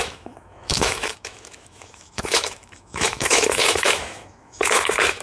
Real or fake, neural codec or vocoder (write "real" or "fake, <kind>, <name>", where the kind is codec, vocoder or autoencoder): fake, autoencoder, DAC-VAE